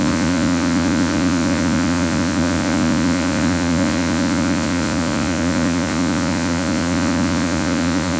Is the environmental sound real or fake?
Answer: fake